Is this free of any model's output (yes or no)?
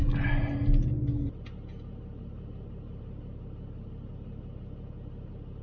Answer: yes